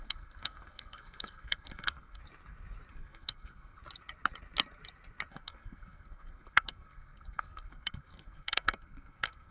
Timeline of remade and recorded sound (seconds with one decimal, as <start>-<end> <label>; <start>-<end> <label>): 0.0-2.2 remade; 2.2-2.9 recorded; 2.9-3.8 remade; 3.8-5.3 recorded; 5.3-9.5 remade

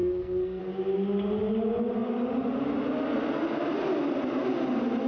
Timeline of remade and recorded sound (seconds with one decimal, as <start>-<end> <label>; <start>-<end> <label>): 0.0-0.6 remade; 0.6-5.1 recorded

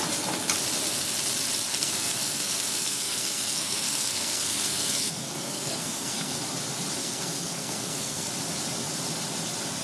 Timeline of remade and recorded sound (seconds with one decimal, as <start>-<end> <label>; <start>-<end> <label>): 0.0-1.7 recorded; 1.7-6.4 remade; 6.4-7.0 recorded; 7.0-8.3 remade; 8.3-9.8 recorded

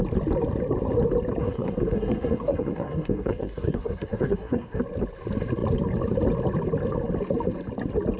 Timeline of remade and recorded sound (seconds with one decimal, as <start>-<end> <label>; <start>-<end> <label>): 0.0-1.4 recorded; 1.4-4.8 remade; 4.8-8.2 recorded